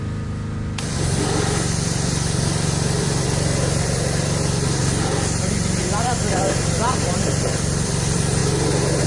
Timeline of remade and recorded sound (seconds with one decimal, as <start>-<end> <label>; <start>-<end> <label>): 0.0-8.4 remade; 8.4-9.1 recorded